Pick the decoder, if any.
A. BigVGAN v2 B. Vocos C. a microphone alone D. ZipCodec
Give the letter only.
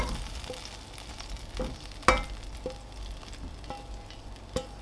C